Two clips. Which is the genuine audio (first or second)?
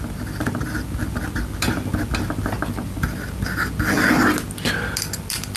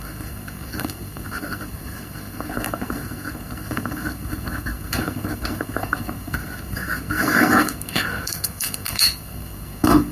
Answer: first